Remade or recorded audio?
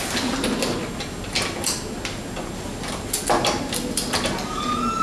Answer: recorded